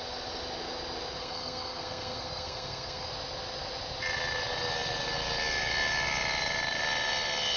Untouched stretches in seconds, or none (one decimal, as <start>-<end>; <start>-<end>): 0.0-1.2; 3.1-7.6